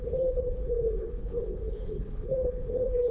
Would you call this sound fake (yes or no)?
yes